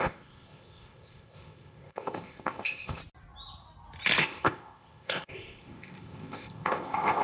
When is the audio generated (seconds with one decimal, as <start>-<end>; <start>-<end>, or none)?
0.0-3.0; 4.2-7.2